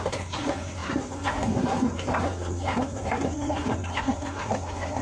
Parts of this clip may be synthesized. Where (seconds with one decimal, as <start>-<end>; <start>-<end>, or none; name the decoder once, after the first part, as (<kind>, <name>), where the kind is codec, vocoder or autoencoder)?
0.0-5.0 (codec, SNAC)